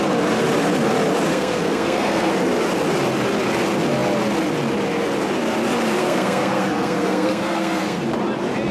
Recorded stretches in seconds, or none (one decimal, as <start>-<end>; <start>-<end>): 0.0-1.3; 2.3-6.0; 8.0-8.7